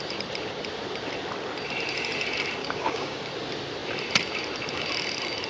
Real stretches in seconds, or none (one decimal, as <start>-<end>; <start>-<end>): 0.0-2.6; 3.2-5.5